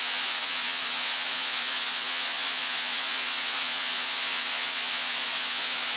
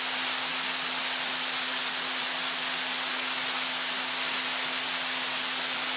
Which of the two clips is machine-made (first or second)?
first